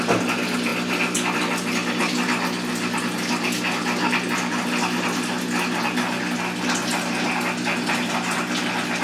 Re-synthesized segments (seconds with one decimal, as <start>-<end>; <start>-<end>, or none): none